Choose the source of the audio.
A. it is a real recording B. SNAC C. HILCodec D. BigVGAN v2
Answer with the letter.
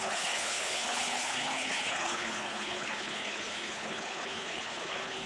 C